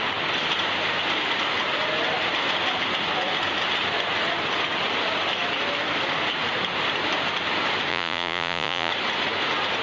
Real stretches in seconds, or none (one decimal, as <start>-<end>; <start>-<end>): 0.0-7.9; 8.9-9.8